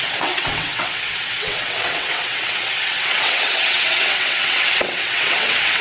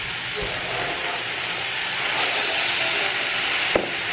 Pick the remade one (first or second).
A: first